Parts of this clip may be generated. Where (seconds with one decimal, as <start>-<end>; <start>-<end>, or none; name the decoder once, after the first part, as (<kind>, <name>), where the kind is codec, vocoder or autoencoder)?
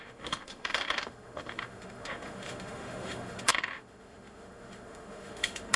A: 0.0-5.8 (autoencoder, DAC-VAE)